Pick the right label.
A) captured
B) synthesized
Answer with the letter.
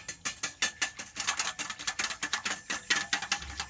A